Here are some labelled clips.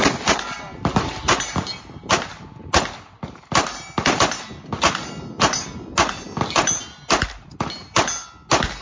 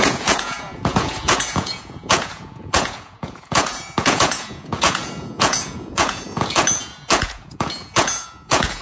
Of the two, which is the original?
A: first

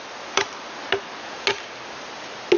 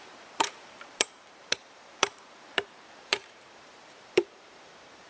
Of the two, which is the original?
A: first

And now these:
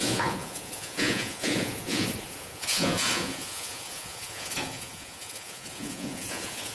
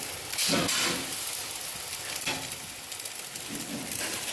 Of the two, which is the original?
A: second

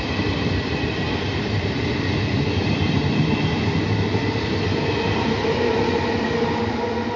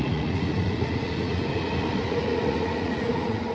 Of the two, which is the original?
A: first